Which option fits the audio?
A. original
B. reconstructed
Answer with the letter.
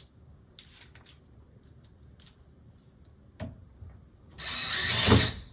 A